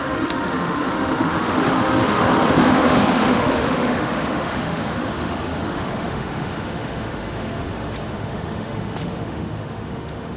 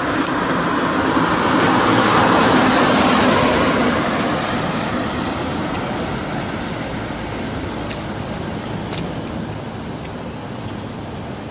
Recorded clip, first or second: second